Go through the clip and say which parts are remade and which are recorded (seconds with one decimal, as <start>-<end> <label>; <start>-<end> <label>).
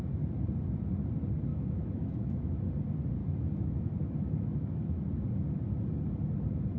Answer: 0.0-1.5 recorded; 1.5-2.7 remade; 2.7-3.2 recorded; 3.2-5.1 remade; 5.1-6.8 recorded